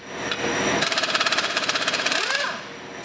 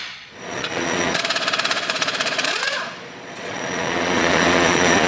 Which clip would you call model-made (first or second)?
second